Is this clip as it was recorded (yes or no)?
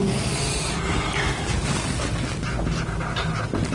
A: yes